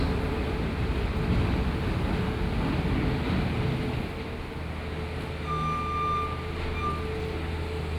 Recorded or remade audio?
recorded